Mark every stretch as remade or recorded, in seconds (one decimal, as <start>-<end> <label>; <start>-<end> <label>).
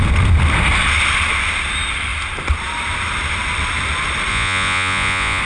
0.0-4.3 recorded; 4.3-5.4 remade